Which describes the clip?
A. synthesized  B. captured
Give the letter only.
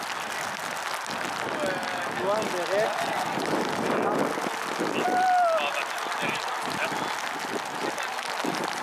B